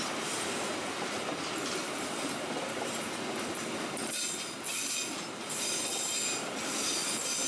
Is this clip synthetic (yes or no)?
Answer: no